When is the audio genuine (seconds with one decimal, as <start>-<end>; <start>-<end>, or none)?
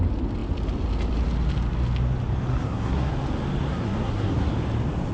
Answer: 0.0-2.5; 3.1-3.7; 4.5-5.1